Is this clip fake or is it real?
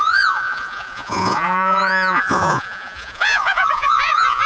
fake